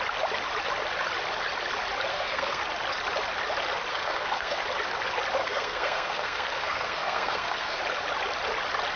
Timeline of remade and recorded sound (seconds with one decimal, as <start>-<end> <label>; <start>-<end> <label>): 0.0-2.1 recorded; 2.1-2.6 remade; 2.6-3.9 recorded; 3.9-4.6 remade; 4.6-5.4 recorded; 5.4-7.8 remade; 7.8-9.0 recorded